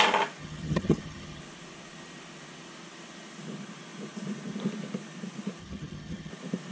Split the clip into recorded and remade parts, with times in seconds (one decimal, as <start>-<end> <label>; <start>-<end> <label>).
0.0-0.4 recorded; 0.4-1.4 remade; 1.4-5.6 recorded; 5.6-6.3 remade; 6.3-6.7 recorded

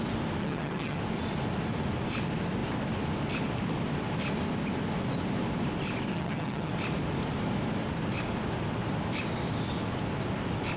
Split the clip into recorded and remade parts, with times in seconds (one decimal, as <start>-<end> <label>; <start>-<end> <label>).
0.0-0.4 recorded; 0.4-1.0 remade; 1.0-6.1 recorded; 6.1-6.7 remade; 6.7-10.8 recorded